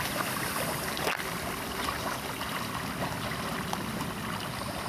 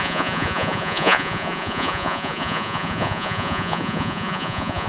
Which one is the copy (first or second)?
second